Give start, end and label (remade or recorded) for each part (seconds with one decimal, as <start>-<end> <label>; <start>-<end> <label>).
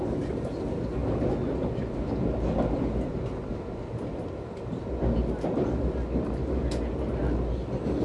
0.0-8.0 recorded